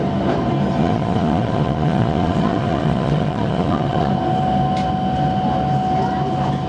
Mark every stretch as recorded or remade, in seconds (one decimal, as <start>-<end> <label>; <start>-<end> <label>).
0.0-0.8 recorded; 0.8-4.1 remade; 4.1-6.7 recorded